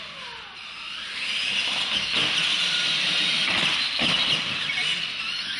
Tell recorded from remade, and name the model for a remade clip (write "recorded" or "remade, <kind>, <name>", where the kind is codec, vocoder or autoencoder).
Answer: recorded